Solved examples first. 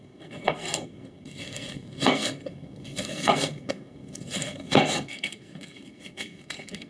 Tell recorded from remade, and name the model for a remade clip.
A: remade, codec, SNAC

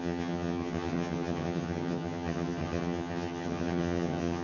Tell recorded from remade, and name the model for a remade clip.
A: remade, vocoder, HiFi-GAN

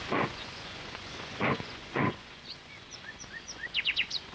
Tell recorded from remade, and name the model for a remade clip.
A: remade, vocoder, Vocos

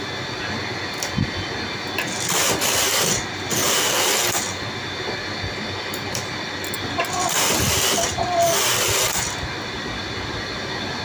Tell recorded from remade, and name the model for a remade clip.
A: recorded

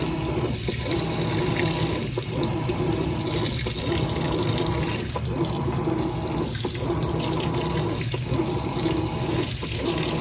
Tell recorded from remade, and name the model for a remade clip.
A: recorded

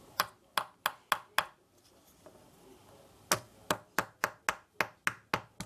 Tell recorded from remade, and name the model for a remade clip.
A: recorded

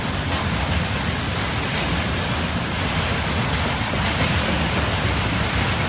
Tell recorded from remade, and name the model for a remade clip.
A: recorded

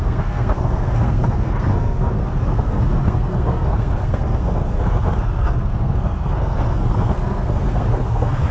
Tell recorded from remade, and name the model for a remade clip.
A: remade, codec, SNAC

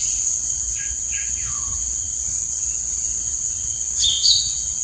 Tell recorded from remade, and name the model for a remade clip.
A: remade, vocoder, WaveNeXt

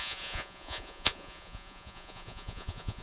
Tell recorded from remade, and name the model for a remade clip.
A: remade, vocoder, Vocos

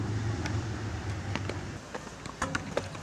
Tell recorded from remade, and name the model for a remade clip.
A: recorded